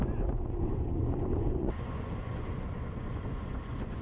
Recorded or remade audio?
remade